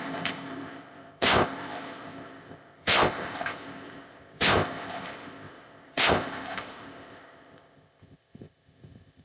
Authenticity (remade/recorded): remade